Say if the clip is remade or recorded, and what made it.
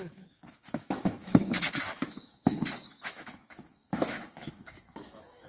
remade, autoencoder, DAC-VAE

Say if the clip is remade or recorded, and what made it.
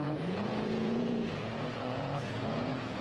remade, vocoder, Vocos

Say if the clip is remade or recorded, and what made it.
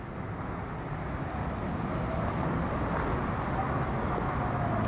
recorded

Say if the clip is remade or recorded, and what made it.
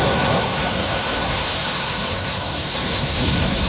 remade, codec, SNAC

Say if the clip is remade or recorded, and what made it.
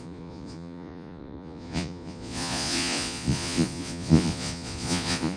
remade, vocoder, Vocos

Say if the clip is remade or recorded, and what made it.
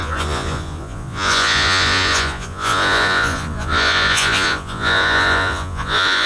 remade, vocoder, Vocos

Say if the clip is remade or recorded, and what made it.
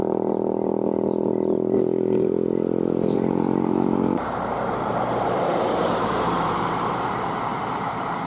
remade, vocoder, BigVGAN v2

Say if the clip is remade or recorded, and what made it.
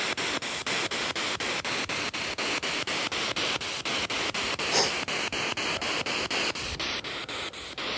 recorded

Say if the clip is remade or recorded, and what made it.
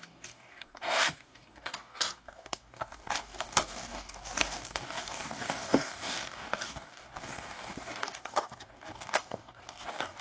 remade, codec, DAC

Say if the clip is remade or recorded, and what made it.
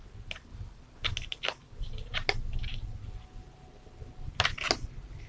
recorded